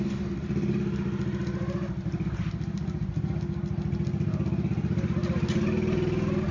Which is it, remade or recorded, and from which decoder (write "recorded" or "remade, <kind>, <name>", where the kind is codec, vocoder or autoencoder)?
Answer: recorded